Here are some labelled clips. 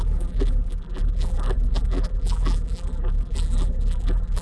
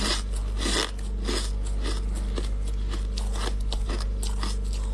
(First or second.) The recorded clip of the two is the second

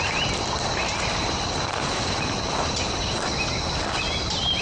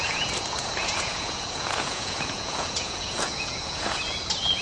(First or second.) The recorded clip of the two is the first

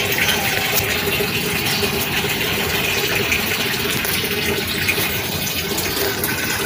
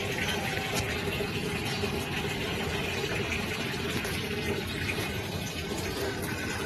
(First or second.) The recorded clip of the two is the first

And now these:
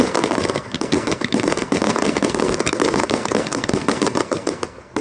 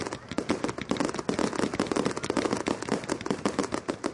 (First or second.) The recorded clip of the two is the second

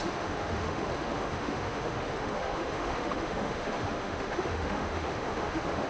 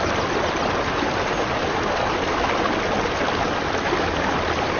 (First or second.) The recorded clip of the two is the second